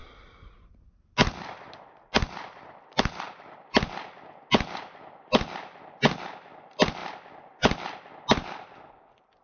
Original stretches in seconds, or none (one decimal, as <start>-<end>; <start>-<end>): 0.0-9.4